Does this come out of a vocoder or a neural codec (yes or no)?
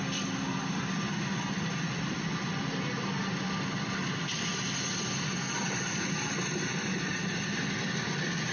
no